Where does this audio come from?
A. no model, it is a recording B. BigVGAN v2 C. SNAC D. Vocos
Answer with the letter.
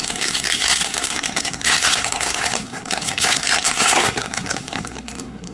C